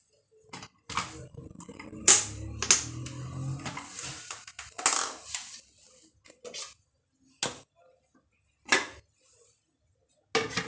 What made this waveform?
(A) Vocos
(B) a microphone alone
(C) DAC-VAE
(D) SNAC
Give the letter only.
B